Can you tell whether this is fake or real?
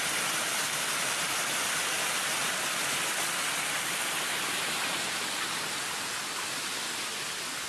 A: real